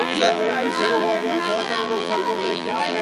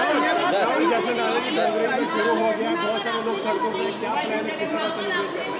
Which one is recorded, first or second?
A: second